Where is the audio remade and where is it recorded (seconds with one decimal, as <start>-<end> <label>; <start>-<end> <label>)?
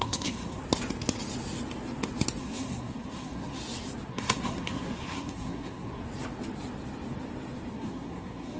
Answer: 0.0-0.6 remade; 0.6-2.4 recorded; 2.4-3.6 remade; 3.6-4.1 recorded; 4.1-6.0 remade; 6.0-7.7 recorded; 7.7-8.6 remade